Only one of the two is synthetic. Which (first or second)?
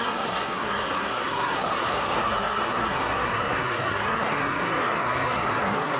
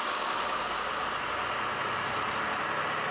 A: first